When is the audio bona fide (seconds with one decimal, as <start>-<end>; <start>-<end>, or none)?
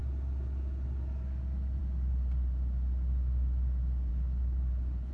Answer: 0.0-4.1